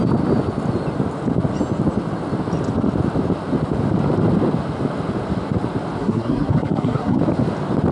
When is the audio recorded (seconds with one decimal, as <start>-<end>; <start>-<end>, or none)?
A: 0.0-6.0; 7.2-7.9